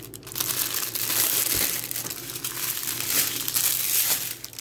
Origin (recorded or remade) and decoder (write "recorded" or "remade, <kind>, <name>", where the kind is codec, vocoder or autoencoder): recorded